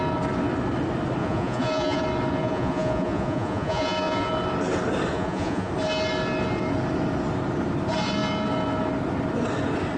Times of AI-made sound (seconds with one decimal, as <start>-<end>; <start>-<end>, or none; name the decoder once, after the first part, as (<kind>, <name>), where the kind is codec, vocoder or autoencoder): 1.2-2.0 (vocoder, Vocos); 2.4-4.3; 5.1-5.7